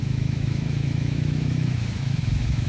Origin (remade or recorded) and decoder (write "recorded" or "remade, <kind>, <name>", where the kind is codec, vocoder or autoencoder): remade, autoencoder, DAC-VAE